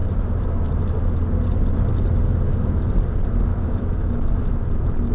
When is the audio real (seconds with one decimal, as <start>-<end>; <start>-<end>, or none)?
0.0-3.5; 4.3-5.1